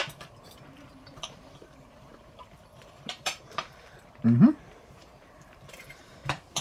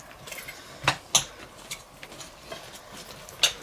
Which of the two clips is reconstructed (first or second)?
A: first